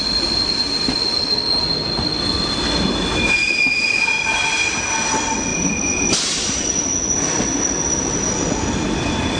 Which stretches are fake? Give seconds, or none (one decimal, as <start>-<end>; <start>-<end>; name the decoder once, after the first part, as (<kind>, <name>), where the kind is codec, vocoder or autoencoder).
none